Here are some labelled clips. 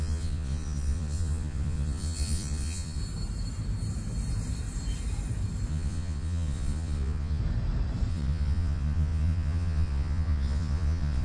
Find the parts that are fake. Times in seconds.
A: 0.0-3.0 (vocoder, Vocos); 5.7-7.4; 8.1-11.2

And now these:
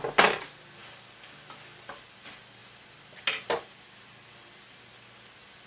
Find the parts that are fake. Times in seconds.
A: 0.8-2.1 (vocoder, BigVGAN v2)

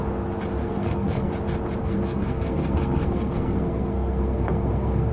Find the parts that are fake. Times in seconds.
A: 0.6-1.3 (codec, SNAC); 1.8-5.1